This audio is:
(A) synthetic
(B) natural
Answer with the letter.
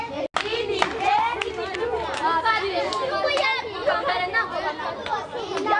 B